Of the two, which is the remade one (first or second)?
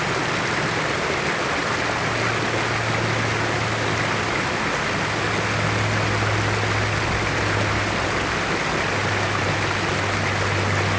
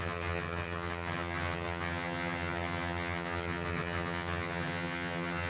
second